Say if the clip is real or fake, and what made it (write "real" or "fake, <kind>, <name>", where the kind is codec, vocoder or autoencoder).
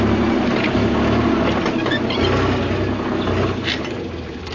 real